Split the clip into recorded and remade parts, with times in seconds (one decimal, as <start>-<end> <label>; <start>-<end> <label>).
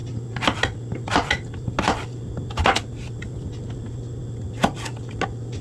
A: 0.0-5.6 recorded